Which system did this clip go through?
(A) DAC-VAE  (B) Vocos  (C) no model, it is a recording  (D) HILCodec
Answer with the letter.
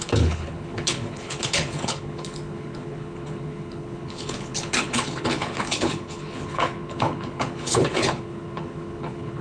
D